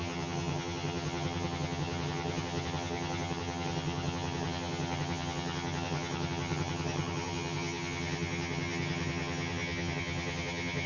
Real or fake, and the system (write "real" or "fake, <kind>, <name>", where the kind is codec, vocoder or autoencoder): fake, vocoder, HiFi-GAN